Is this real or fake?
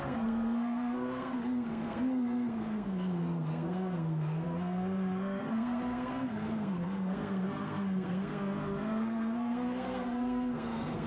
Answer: fake